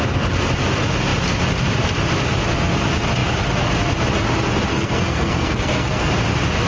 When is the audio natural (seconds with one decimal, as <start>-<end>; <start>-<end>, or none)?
0.0-4.7; 6.1-6.7